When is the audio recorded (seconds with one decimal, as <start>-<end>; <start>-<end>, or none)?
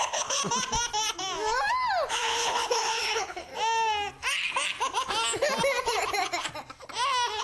0.4-2.1; 3.5-7.4